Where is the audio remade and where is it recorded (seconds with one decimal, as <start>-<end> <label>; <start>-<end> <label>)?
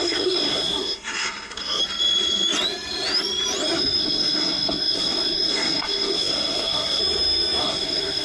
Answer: 0.0-1.8 remade; 1.8-4.0 recorded; 4.0-7.0 remade; 7.0-7.6 recorded; 7.6-8.2 remade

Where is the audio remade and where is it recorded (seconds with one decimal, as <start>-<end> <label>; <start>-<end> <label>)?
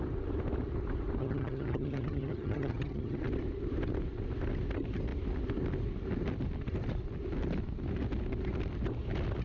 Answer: 0.0-1.2 recorded; 1.2-3.2 remade; 3.2-9.4 recorded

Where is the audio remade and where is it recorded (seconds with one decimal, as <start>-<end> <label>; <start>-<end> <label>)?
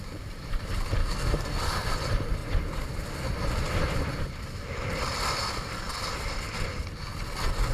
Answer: 0.0-1.0 recorded; 1.0-1.6 remade; 1.6-7.7 recorded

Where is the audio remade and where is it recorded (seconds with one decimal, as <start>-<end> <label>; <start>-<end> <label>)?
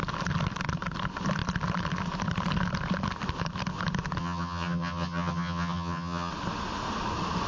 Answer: 0.0-4.2 recorded; 4.2-6.3 remade; 6.3-7.5 recorded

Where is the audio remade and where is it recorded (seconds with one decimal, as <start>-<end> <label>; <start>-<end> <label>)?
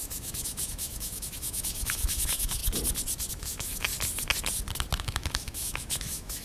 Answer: 0.0-2.6 remade; 2.6-3.3 recorded; 3.3-3.9 remade; 3.9-5.0 recorded; 5.0-6.4 remade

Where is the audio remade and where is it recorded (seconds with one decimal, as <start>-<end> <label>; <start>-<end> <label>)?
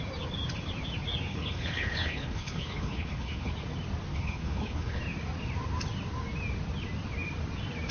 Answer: 0.0-1.3 recorded; 1.3-3.5 remade; 3.5-4.1 recorded; 4.1-5.0 remade; 5.0-7.9 recorded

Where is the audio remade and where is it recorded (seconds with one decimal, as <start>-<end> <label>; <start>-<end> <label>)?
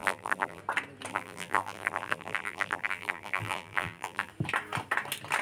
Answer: 0.0-0.6 remade; 0.6-1.1 recorded; 1.1-4.3 remade; 4.3-5.4 recorded